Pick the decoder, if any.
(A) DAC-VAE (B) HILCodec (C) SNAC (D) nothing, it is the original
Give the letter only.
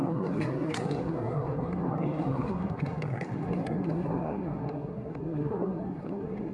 C